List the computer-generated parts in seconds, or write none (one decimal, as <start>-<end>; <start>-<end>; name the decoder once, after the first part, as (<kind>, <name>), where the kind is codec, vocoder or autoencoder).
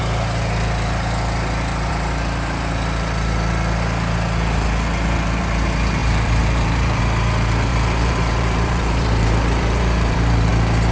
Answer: 6.0-7.0 (vocoder, BigVGAN v2); 7.7-10.5